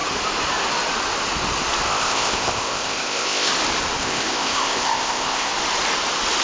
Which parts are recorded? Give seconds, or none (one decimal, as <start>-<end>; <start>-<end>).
0.0-1.9; 3.5-4.0; 5.5-6.4